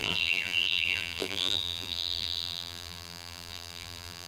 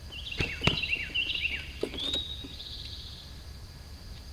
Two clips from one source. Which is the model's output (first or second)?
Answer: first